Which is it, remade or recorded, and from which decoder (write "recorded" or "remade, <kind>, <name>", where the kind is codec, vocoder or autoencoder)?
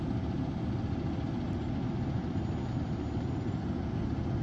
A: recorded